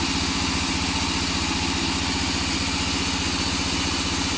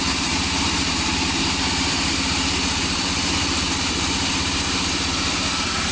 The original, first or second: first